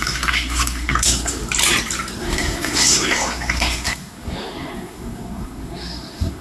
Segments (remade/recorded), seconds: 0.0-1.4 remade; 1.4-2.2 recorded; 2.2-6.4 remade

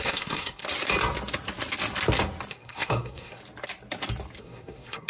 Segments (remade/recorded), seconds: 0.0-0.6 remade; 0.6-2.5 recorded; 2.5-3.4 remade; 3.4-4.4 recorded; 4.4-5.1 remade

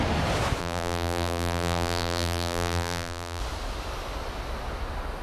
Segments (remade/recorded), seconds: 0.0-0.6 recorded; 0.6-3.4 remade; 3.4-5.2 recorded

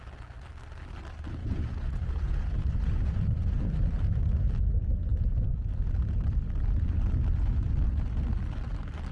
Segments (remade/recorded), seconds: 0.0-1.4 recorded; 1.4-3.6 remade; 3.6-9.1 recorded